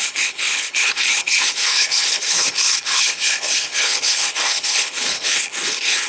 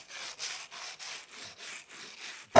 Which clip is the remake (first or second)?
first